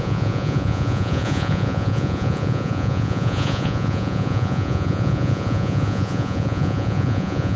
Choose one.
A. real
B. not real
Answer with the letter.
B